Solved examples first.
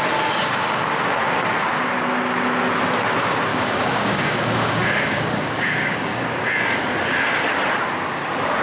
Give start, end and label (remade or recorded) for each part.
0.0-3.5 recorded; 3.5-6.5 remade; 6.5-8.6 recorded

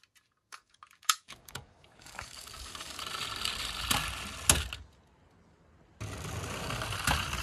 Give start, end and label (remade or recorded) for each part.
0.0-0.5 recorded; 0.5-3.0 remade; 3.0-7.4 recorded

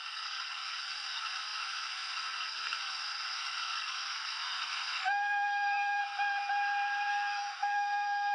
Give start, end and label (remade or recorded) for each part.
0.0-6.0 remade; 6.0-7.1 recorded; 7.1-8.3 remade

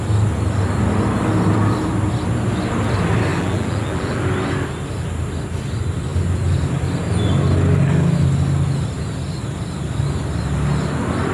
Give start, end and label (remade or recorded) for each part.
0.0-3.3 recorded; 3.3-4.2 remade; 4.2-11.3 recorded

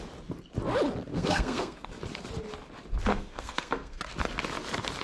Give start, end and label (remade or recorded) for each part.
0.0-1.1 recorded; 1.1-2.0 remade; 2.0-3.1 recorded; 3.1-4.0 remade; 4.0-5.0 recorded

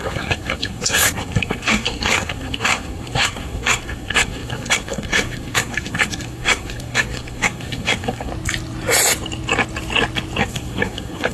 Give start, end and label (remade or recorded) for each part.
0.0-8.3 remade; 8.3-10.4 recorded; 10.4-11.3 remade